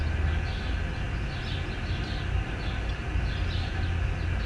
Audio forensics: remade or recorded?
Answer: recorded